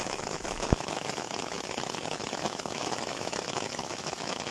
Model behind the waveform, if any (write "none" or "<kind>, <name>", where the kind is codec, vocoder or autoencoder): autoencoder, DAC-VAE